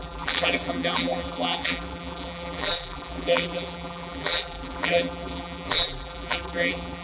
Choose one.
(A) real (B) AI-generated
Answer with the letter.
B